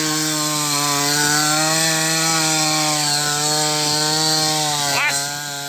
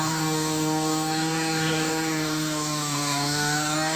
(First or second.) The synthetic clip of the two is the second